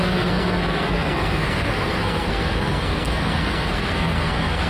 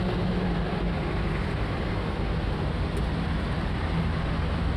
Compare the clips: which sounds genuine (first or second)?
second